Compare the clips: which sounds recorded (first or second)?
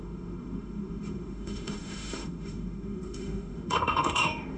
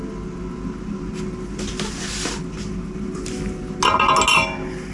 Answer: second